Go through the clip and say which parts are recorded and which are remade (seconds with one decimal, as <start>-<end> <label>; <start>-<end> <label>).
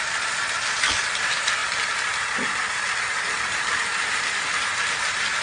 0.0-5.4 recorded